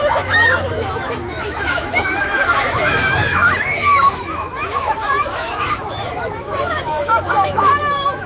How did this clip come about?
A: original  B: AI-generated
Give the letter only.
B